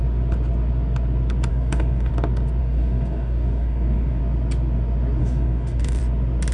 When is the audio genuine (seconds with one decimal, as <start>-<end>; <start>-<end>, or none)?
0.0-1.5; 2.1-2.6; 4.2-5.2; 6.0-6.5